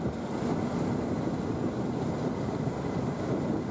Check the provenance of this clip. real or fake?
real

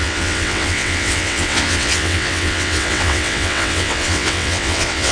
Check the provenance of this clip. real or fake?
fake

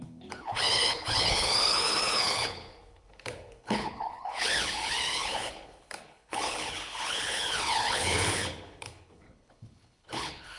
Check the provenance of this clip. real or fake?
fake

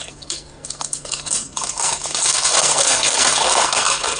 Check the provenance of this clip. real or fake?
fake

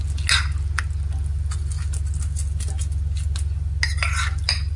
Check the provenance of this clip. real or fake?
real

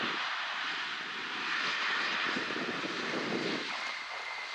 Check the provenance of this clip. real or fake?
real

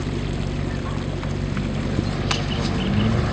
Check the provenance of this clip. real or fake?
real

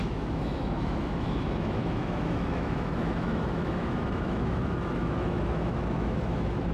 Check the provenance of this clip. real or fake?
fake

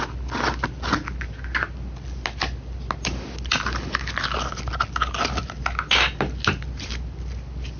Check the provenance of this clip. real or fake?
real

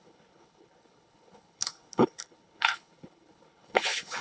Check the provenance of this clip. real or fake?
fake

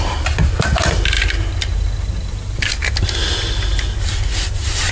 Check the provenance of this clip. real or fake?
real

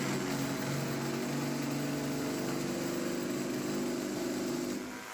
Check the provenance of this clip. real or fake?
real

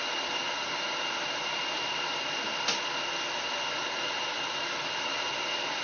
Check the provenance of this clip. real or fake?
fake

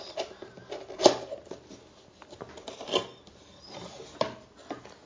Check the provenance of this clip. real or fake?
real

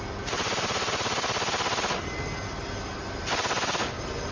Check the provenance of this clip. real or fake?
real